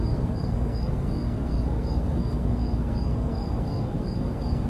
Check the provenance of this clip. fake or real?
fake